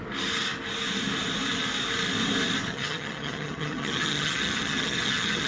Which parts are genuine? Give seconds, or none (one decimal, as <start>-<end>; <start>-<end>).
0.0-2.7